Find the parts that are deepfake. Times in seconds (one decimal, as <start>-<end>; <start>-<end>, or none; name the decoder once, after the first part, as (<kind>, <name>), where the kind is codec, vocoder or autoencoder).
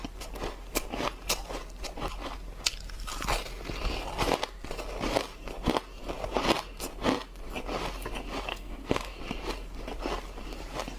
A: 8.5-9.2 (codec, SNAC)